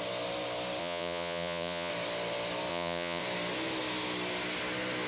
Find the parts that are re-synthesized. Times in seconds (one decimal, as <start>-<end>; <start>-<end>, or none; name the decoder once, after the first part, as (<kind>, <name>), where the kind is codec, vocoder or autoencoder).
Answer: 0.8-1.9 (vocoder, Vocos); 2.7-3.2